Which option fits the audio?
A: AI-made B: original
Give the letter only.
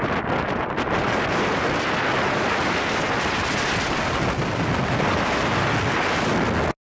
B